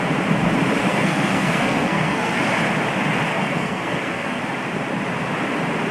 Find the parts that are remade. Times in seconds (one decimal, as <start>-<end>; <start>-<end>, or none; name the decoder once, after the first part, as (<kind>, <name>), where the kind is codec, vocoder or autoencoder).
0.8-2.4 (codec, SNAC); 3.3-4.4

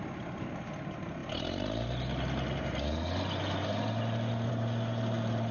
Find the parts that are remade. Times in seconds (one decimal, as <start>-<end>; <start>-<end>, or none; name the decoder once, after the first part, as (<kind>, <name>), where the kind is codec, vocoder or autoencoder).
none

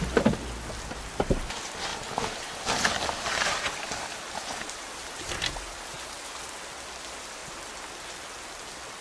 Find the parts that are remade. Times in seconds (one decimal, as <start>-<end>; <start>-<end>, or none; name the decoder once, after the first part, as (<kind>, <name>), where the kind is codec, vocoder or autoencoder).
none